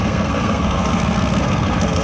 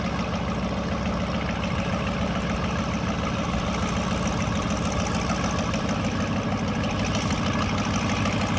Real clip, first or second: second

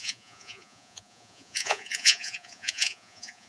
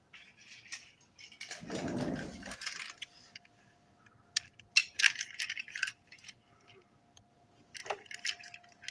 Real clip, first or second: second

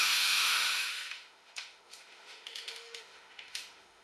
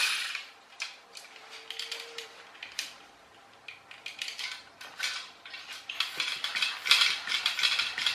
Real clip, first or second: second